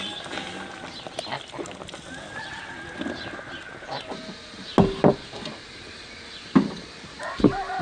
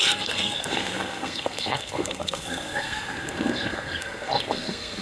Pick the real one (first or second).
first